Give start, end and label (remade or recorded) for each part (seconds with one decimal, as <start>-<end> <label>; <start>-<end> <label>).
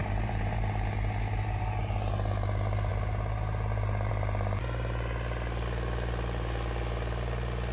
0.0-0.6 remade; 0.6-7.7 recorded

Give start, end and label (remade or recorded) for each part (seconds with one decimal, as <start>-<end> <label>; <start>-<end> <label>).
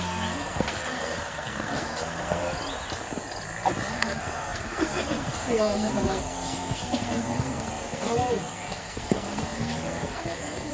0.0-2.4 remade; 2.4-3.9 recorded; 3.9-10.7 remade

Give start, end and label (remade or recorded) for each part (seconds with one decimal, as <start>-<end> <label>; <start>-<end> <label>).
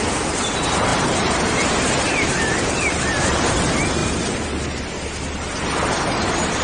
0.0-6.6 recorded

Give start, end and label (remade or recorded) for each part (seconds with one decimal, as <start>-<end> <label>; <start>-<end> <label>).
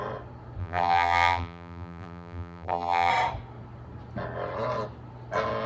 0.0-0.6 recorded; 0.6-3.1 remade; 3.1-5.7 recorded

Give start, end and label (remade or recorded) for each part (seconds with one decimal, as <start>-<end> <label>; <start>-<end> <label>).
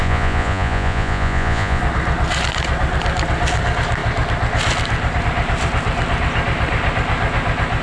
0.0-1.8 remade; 1.8-7.8 recorded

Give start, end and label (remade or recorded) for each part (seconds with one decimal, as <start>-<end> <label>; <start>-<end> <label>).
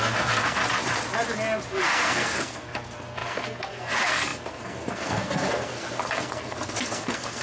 0.0-0.6 remade; 0.6-1.7 recorded; 1.7-7.4 remade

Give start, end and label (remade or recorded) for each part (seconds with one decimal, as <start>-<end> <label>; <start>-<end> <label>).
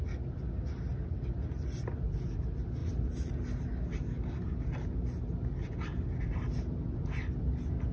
0.0-7.9 recorded